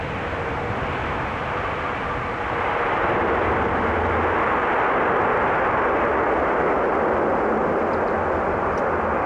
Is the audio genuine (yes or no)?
yes